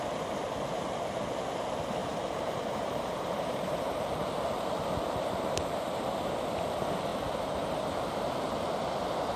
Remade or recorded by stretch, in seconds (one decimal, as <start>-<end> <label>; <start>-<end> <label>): 0.0-2.0 recorded; 2.0-6.4 remade; 6.4-7.1 recorded; 7.1-8.0 remade; 8.0-9.4 recorded